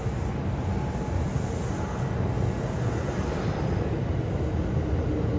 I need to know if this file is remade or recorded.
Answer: recorded